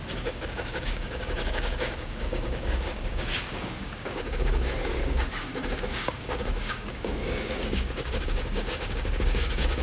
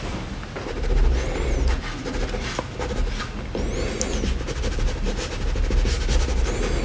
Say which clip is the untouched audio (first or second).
second